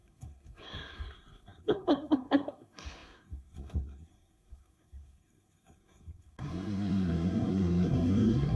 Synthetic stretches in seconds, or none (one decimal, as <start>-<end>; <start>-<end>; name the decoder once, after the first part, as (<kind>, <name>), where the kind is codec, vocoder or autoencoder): 0.0-8.6 (codec, SNAC)